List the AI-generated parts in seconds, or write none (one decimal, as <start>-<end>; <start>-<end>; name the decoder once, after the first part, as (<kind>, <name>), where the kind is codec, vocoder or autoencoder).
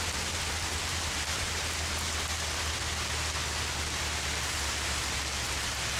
0.9-1.4 (vocoder, BigVGAN v2)